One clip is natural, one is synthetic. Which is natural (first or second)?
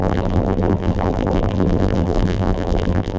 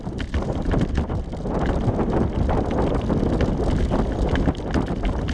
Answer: second